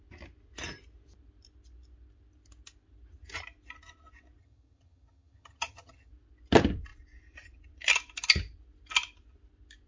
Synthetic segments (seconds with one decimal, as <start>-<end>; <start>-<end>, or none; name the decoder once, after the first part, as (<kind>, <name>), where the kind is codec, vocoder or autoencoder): 4.4-6.1 (vocoder, HiFi-GAN)